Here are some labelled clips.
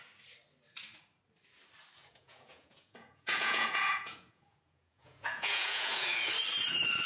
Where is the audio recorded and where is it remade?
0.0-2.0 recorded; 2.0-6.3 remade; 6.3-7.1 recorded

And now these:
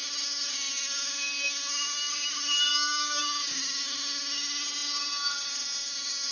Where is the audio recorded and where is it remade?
0.0-2.7 recorded; 2.7-3.2 remade; 3.2-6.3 recorded

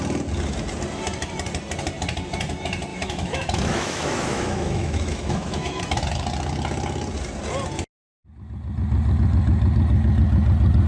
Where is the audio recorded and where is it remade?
0.0-2.9 recorded; 2.9-5.8 remade; 5.8-10.9 recorded

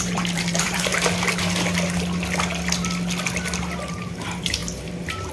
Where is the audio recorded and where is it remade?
0.0-0.9 remade; 0.9-4.1 recorded; 4.1-5.3 remade

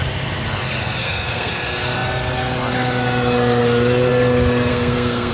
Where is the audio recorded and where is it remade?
0.0-1.0 recorded; 1.0-1.5 remade; 1.5-4.7 recorded; 4.7-5.3 remade

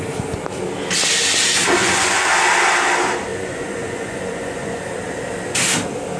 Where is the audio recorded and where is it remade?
0.0-1.8 recorded; 1.8-2.3 remade; 2.3-3.3 recorded; 3.3-4.8 remade; 4.8-6.2 recorded

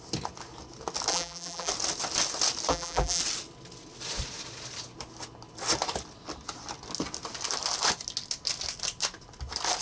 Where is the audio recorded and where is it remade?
0.0-1.1 recorded; 1.1-1.7 remade; 1.7-2.7 recorded; 2.7-3.2 remade; 3.2-9.8 recorded